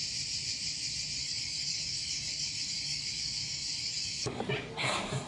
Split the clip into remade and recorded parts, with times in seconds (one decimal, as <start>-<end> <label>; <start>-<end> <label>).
0.0-1.2 recorded; 1.2-4.4 remade; 4.4-5.3 recorded